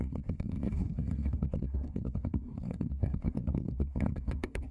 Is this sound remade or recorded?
remade